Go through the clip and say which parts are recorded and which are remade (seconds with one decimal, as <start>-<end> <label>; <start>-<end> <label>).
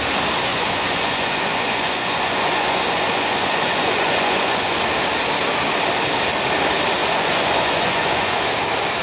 0.0-0.5 recorded; 0.5-4.8 remade; 4.8-7.0 recorded; 7.0-8.4 remade; 8.4-9.0 recorded